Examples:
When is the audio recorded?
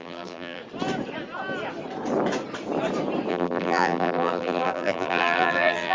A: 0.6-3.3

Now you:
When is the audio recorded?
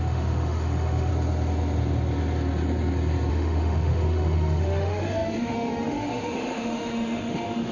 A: 1.1-3.3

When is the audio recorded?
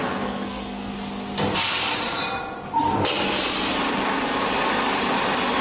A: 0.9-5.6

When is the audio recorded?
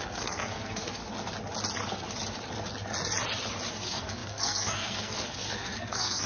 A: 1.0-3.7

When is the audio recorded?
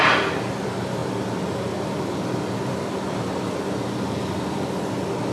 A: 0.0-5.3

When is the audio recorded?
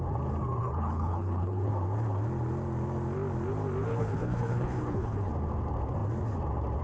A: 0.0-0.6; 1.7-3.9; 5.3-6.8